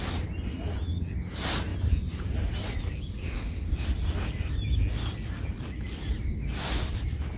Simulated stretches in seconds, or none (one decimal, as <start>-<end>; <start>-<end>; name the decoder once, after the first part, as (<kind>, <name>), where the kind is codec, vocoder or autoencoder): 3.2-3.7 (autoencoder, DAC-VAE)